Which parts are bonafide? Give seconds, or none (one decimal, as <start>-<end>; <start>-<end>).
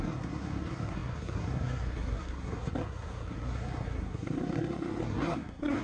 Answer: none